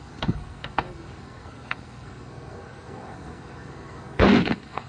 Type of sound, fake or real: fake